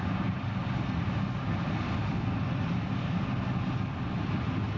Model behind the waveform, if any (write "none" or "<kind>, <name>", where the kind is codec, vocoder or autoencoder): none